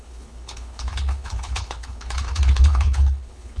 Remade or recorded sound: remade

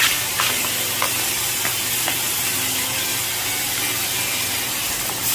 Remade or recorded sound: recorded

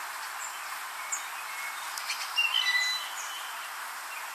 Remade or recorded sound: recorded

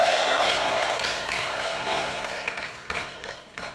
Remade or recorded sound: remade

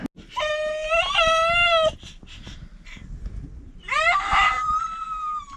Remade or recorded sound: recorded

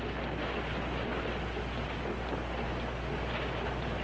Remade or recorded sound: recorded